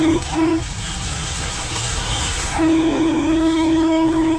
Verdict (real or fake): fake